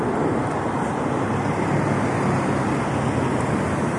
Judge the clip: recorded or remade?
recorded